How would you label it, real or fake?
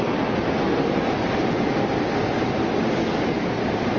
real